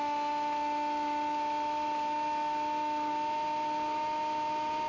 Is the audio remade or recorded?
recorded